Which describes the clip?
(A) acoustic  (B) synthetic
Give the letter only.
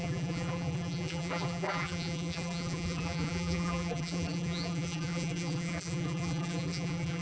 B